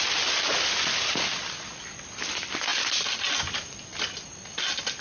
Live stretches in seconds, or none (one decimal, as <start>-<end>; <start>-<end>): 0.0-5.0